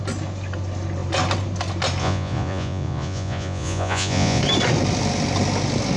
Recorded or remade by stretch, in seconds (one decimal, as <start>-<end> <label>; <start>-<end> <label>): 0.0-2.0 recorded; 2.0-4.4 remade; 4.4-6.0 recorded